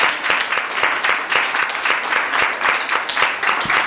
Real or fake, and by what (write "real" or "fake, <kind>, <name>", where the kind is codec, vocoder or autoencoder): real